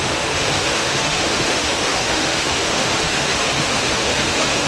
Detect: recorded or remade remade